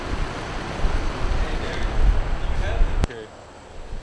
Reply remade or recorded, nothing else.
recorded